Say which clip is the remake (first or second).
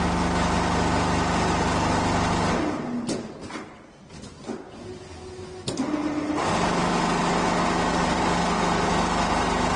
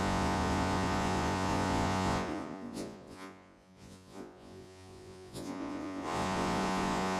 second